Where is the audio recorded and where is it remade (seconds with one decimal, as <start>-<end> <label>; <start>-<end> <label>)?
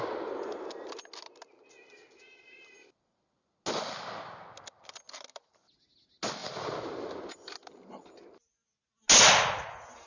0.0-10.1 recorded